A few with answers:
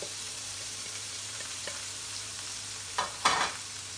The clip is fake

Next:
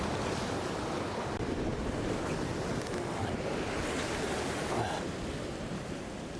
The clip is real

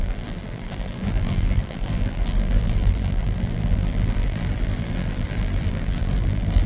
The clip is fake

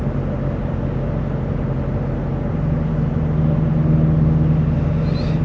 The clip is real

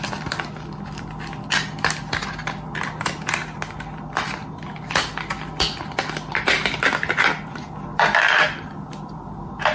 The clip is real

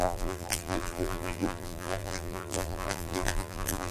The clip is fake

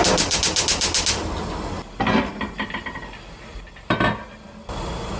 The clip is real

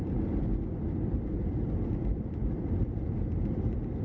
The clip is fake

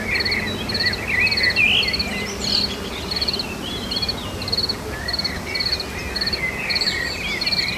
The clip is real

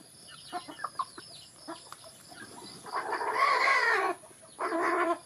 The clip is fake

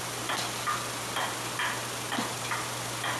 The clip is real